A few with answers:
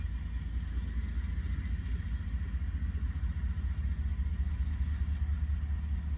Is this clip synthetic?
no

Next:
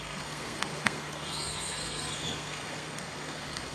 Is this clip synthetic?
yes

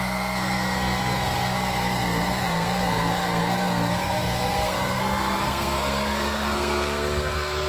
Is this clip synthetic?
yes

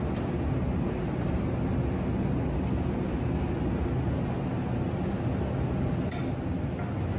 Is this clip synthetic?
no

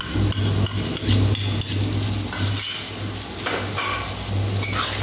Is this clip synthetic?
no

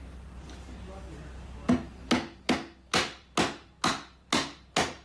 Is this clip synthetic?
no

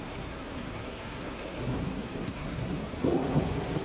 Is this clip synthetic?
yes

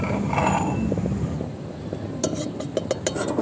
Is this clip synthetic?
no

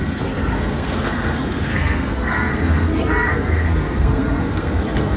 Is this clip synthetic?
yes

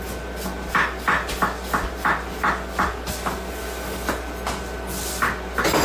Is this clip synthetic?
no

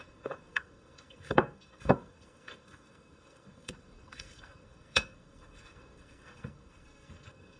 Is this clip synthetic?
yes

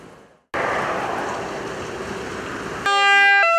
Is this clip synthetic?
no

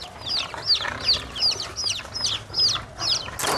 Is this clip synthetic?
no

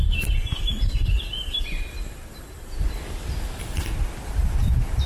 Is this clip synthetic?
no